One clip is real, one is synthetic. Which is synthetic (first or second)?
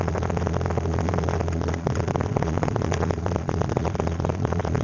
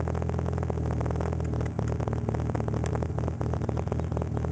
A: first